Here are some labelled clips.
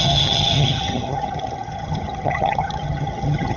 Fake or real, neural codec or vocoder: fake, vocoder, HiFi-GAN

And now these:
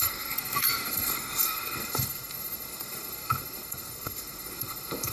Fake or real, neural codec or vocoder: fake, codec, SNAC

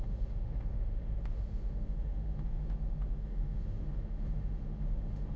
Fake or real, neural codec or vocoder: fake, autoencoder, DAC-VAE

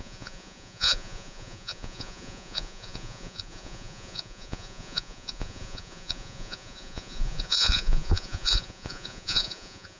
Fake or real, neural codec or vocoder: fake, vocoder, Vocos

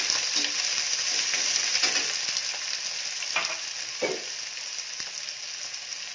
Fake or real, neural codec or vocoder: real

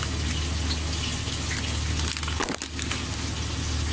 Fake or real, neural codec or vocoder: real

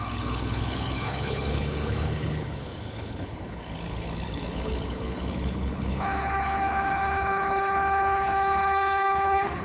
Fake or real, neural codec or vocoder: fake, codec, HILCodec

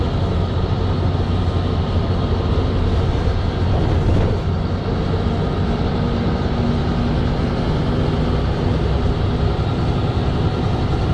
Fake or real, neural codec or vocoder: real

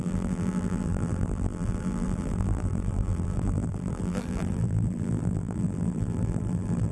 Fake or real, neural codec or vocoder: fake, vocoder, BigVGAN v2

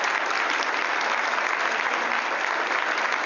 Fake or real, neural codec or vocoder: real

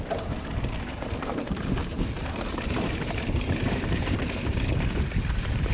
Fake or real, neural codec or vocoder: fake, vocoder, BigVGAN v2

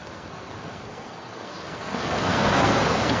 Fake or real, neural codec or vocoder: fake, codec, SNAC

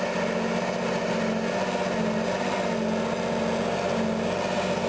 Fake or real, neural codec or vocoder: real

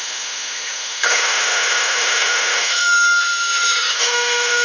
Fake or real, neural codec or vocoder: fake, autoencoder, DAC-VAE